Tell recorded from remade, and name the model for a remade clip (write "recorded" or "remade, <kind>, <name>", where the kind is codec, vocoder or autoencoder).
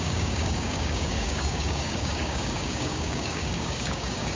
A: remade, codec, DAC